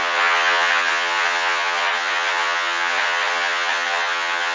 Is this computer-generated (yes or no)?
yes